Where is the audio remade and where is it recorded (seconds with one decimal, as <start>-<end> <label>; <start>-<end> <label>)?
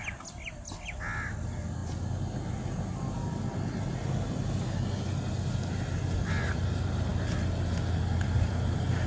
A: 0.0-9.1 recorded